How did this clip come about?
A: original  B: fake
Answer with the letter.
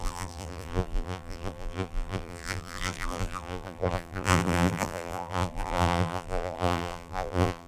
B